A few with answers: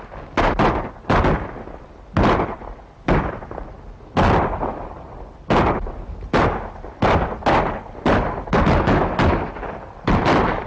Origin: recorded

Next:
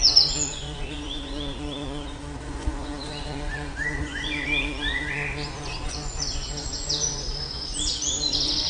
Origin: remade